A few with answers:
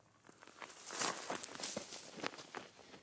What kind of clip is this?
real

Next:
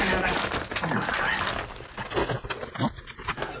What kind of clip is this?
real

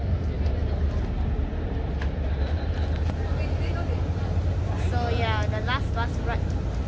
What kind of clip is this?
real